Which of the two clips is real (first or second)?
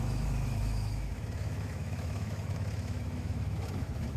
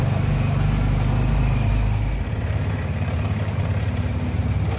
second